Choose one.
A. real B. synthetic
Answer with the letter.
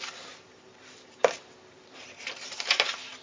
A